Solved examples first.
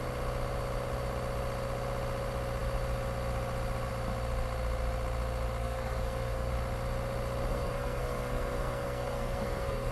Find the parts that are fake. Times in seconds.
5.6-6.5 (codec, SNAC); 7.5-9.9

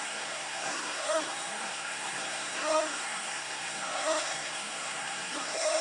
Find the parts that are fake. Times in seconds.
0.0-5.8 (codec, SNAC)

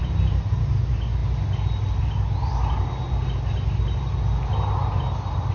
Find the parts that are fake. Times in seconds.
none